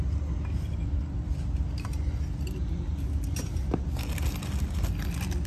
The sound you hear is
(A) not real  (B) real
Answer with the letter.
B